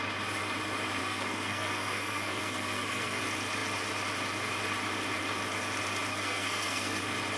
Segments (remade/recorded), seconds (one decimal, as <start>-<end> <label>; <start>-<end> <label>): 0.0-1.0 recorded; 1.0-3.2 remade; 3.2-6.1 recorded; 6.1-7.0 remade; 7.0-7.4 recorded